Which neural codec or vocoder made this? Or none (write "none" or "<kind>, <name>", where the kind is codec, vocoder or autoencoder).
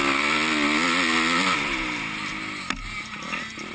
none